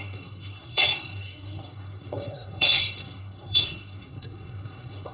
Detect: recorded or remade remade